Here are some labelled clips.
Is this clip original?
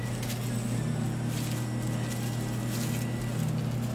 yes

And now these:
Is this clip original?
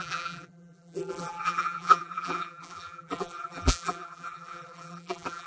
no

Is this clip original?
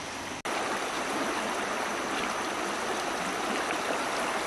yes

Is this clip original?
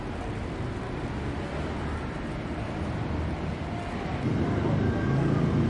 yes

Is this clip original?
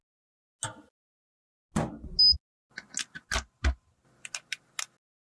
yes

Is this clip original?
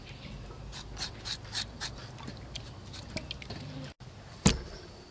yes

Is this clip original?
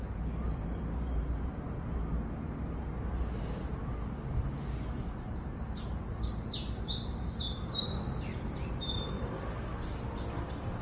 no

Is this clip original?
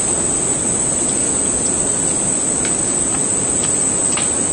yes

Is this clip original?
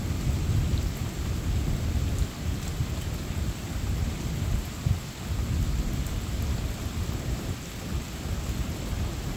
yes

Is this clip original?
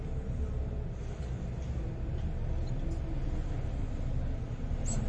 yes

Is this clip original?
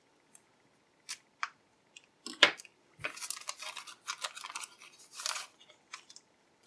no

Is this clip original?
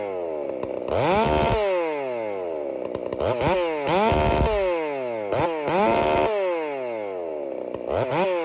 yes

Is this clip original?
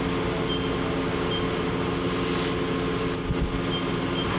yes